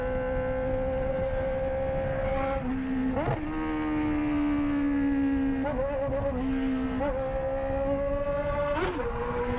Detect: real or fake real